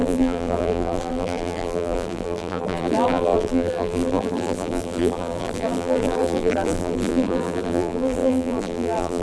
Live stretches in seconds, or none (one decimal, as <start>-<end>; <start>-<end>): none